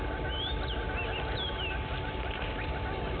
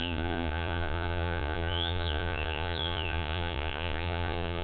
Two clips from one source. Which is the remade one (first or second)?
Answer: second